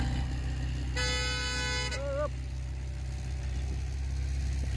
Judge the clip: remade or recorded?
recorded